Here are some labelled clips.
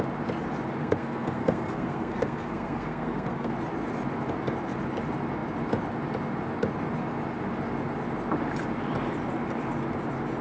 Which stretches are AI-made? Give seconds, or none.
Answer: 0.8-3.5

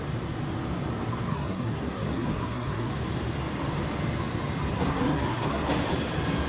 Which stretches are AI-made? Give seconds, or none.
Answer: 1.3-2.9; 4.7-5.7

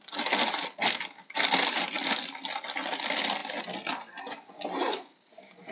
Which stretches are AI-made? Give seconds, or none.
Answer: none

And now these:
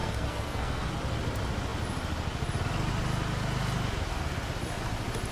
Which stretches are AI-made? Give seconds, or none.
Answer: 0.0-0.9